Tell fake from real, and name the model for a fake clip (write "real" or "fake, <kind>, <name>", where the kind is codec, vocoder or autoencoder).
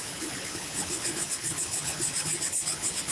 fake, codec, HILCodec